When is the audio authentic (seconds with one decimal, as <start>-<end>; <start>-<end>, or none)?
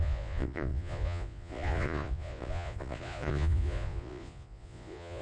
none